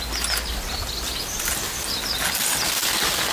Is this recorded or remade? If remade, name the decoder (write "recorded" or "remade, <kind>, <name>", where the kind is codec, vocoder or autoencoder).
recorded